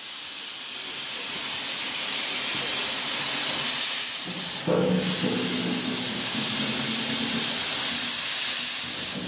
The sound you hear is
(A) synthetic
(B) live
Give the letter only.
B